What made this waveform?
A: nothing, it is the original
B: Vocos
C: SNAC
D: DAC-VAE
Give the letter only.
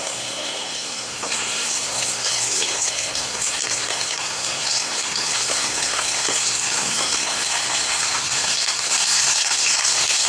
C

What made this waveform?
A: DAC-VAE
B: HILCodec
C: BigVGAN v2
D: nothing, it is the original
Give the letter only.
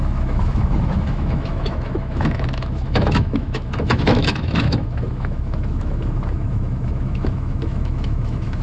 A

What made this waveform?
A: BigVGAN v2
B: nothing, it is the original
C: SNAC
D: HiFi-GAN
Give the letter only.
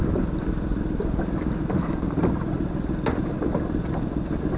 B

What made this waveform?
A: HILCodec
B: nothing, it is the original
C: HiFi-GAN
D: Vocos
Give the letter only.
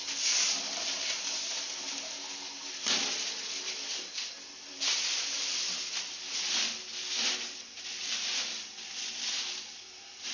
B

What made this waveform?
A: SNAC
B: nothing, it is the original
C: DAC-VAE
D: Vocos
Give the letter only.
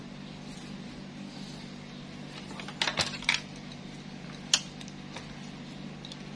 B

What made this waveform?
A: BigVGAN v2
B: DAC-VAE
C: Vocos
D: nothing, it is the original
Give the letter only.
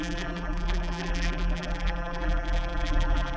A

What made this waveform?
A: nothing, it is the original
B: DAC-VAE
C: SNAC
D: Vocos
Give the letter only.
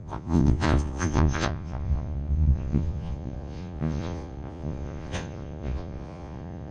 D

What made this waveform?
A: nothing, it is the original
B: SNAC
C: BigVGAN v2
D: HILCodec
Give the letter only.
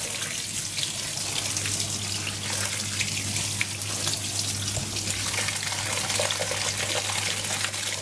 A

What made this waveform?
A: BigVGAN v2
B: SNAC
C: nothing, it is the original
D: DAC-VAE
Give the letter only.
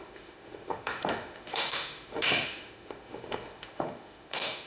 D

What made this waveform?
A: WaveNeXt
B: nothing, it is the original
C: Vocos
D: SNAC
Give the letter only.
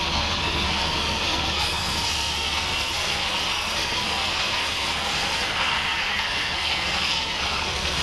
D